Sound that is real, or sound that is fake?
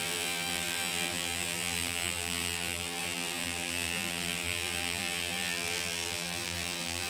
fake